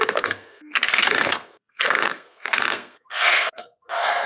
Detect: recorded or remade remade